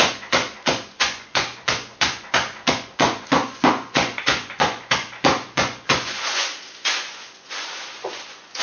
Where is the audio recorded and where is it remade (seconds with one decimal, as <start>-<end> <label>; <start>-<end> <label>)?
0.0-8.6 remade